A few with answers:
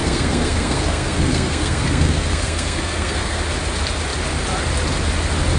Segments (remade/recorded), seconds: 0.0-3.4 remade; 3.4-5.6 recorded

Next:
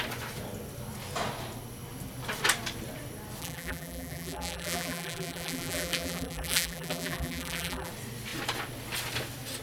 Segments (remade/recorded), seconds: 0.0-3.4 recorded; 3.4-7.9 remade; 7.9-9.6 recorded

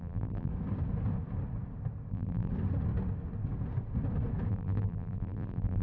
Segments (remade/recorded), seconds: 0.0-0.5 remade; 0.5-2.1 recorded; 2.1-2.5 remade; 2.5-4.5 recorded; 4.5-5.8 remade

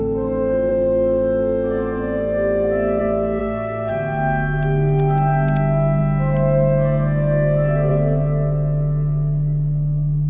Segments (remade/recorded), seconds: 0.0-3.4 recorded; 3.4-3.9 remade; 3.9-10.3 recorded

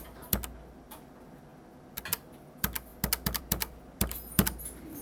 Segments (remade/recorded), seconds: 0.0-5.0 recorded

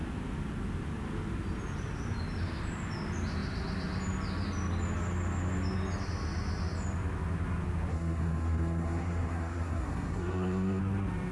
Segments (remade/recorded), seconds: 0.0-7.9 recorded; 7.9-10.8 remade; 10.8-11.3 recorded

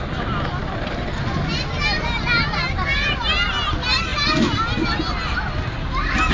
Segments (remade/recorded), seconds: 0.0-6.3 recorded